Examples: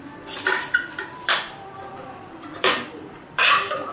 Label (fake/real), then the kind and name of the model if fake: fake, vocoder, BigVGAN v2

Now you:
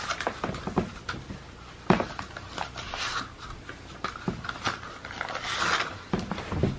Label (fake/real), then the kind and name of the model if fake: real